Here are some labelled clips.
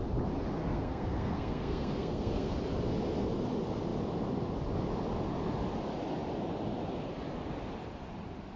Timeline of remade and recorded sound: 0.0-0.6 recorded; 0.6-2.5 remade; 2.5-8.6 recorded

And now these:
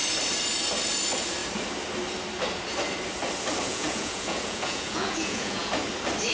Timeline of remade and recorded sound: 0.0-3.7 recorded; 3.7-5.7 remade; 5.7-6.3 recorded

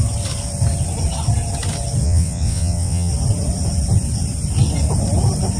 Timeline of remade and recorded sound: 0.0-2.0 recorded; 2.0-3.1 remade; 3.1-5.6 recorded

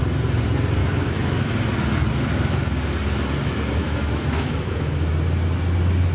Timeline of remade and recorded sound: 0.0-0.8 recorded; 0.8-1.5 remade; 1.5-3.8 recorded; 3.8-5.1 remade; 5.1-6.1 recorded

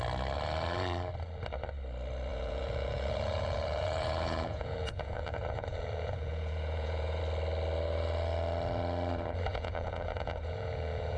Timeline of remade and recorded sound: 0.0-2.3 recorded; 2.3-7.2 remade; 7.2-9.5 recorded; 9.5-11.2 remade